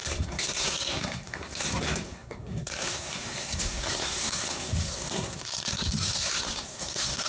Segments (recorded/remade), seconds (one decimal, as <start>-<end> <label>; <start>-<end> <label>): 0.0-7.3 remade